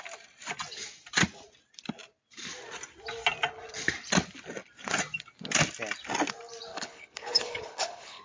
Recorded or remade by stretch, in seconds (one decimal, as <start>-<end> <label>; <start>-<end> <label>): 0.0-6.7 recorded; 6.7-8.2 remade